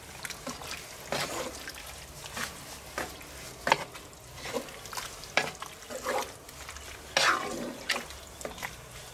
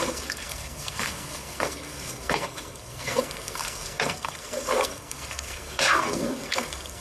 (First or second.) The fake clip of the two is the second